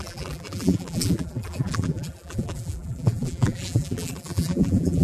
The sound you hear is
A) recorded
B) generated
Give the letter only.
B